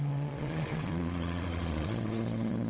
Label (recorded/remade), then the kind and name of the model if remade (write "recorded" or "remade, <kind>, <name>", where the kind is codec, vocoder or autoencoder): remade, vocoder, Vocos